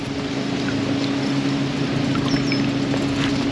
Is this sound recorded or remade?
recorded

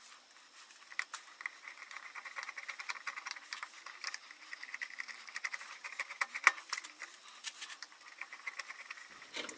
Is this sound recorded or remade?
recorded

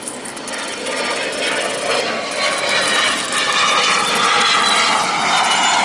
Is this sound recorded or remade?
recorded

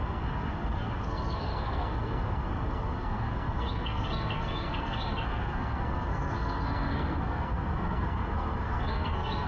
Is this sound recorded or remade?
remade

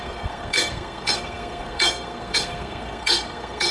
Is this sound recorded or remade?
remade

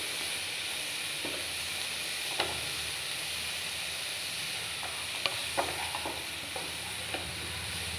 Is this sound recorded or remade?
recorded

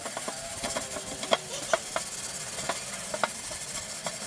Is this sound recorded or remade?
recorded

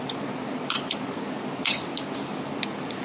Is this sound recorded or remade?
recorded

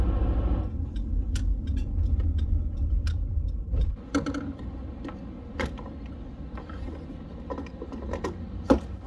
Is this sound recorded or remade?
recorded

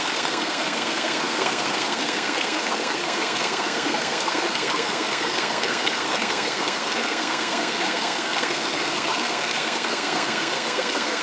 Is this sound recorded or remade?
remade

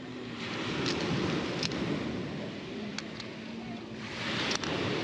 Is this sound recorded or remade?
recorded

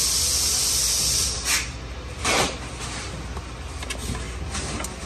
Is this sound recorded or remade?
recorded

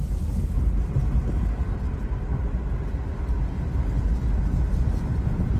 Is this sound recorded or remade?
recorded